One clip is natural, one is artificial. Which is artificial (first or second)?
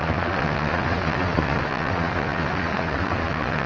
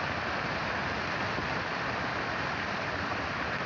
first